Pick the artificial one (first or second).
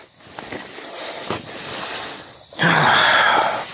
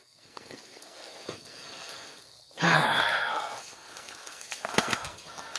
second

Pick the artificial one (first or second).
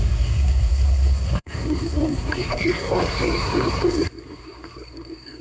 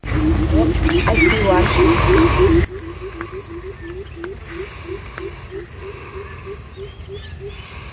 first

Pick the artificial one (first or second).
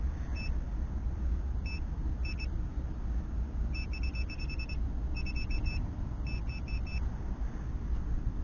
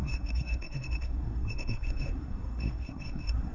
second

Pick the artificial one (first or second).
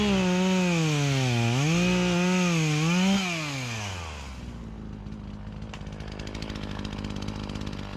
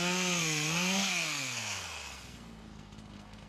second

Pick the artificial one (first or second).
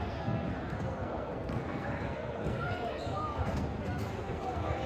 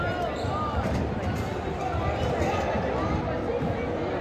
first